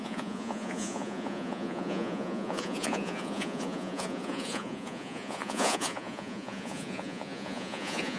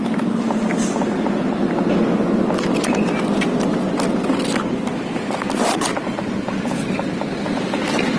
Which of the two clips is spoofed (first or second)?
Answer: first